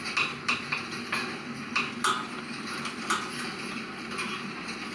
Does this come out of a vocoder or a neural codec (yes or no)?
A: no